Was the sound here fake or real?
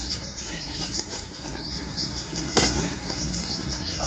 fake